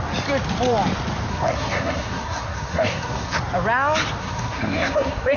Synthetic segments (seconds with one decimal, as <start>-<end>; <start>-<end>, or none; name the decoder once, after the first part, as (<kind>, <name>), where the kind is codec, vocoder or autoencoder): 1.3-3.4 (codec, SNAC); 4.2-5.4